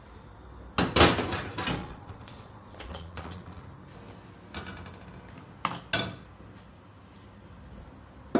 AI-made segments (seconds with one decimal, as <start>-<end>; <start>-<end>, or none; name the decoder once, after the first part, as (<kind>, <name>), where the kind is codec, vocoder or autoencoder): 1.8-3.6 (vocoder, Vocos)